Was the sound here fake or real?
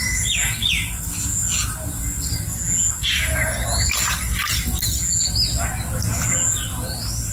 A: real